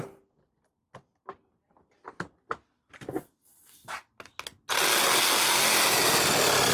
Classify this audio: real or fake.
real